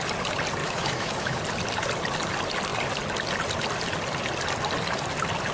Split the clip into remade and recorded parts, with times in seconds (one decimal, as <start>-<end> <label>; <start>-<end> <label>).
0.0-0.6 recorded; 0.6-1.4 remade; 1.4-5.5 recorded

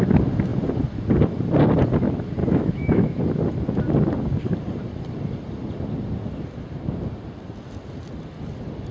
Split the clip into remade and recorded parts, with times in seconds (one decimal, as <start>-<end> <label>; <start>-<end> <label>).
0.0-2.4 recorded; 2.4-3.2 remade; 3.2-8.9 recorded

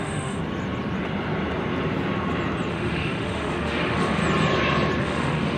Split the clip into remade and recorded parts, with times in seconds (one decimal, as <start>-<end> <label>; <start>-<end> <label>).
0.0-0.4 remade; 0.4-2.7 recorded; 2.7-4.2 remade; 4.2-5.0 recorded; 5.0-5.6 remade

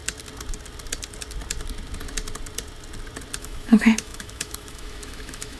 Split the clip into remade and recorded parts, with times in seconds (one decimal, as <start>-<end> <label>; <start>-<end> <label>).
0.0-3.4 recorded; 3.4-5.6 remade

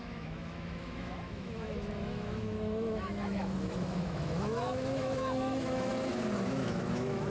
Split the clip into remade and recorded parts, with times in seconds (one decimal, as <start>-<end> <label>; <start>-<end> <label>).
0.0-5.9 remade; 5.9-6.5 recorded; 6.5-7.3 remade

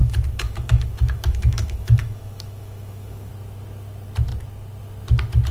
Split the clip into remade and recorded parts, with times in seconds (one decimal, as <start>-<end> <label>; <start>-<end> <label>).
0.0-3.3 remade; 3.3-5.5 recorded